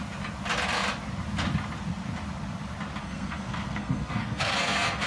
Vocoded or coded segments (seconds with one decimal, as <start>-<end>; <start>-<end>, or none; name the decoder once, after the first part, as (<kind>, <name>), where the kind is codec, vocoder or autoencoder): 3.0-5.1 (codec, SNAC)